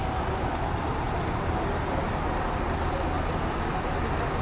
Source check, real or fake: real